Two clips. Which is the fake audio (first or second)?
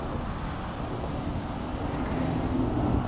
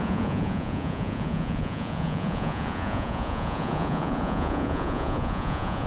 second